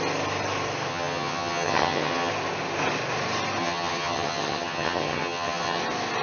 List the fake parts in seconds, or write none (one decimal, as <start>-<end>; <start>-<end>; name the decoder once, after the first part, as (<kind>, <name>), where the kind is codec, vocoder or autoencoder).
0.9-2.3 (vocoder, HiFi-GAN); 3.6-5.8